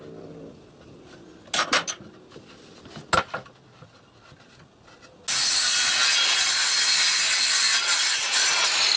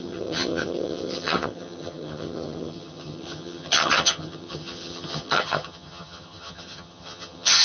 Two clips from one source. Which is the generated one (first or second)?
second